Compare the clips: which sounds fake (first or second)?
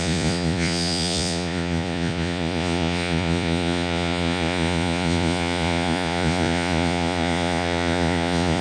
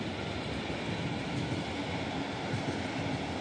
first